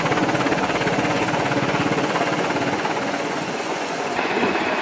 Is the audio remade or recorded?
remade